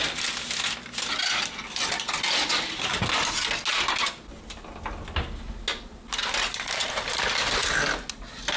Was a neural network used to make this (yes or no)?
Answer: no